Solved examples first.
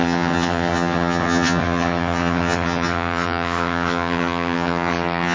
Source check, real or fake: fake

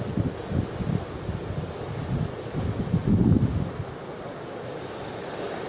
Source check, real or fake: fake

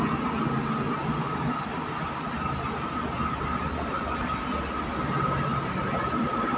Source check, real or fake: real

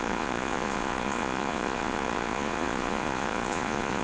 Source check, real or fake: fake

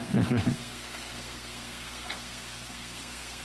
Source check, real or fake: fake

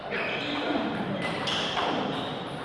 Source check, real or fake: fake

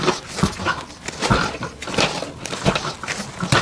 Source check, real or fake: real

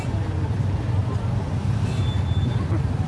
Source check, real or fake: real